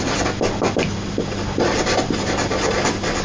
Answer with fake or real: real